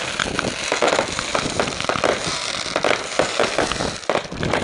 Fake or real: fake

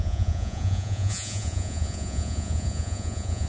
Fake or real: fake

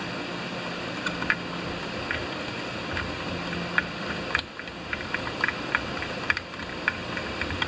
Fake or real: real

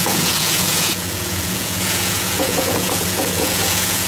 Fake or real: fake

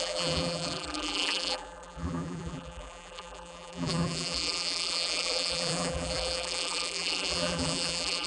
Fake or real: fake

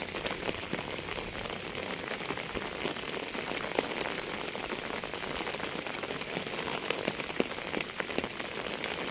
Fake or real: real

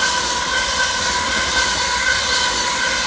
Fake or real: real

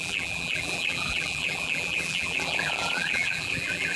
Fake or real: fake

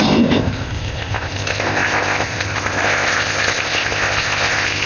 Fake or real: fake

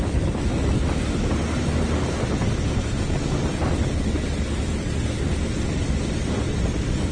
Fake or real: real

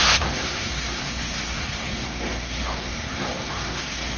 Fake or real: fake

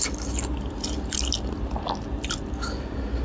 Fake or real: real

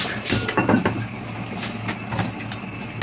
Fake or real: real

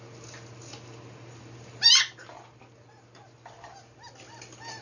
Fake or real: real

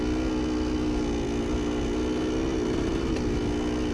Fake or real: real